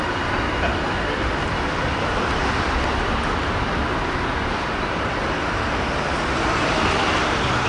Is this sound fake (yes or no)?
no